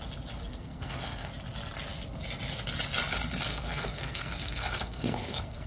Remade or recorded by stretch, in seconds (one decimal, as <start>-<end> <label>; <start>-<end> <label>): 0.0-0.5 recorded; 0.5-1.3 remade; 1.3-3.5 recorded; 3.5-5.7 remade